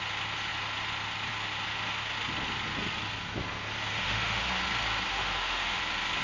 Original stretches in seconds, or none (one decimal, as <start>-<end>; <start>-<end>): 0.0-3.9; 4.4-5.1; 5.8-6.2